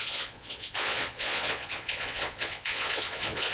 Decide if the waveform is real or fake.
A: fake